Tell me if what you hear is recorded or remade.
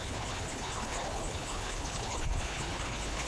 remade